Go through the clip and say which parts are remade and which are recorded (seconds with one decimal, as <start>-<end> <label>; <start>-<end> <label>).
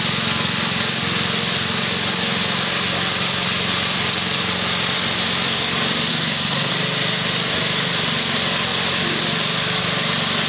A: 0.0-6.1 recorded; 6.1-6.7 remade; 6.7-10.5 recorded